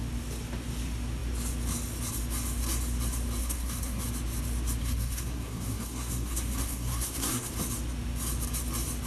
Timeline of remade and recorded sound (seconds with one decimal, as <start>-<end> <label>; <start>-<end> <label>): 0.0-3.4 recorded; 3.4-4.0 remade; 4.0-4.8 recorded; 4.8-7.5 remade; 7.5-9.1 recorded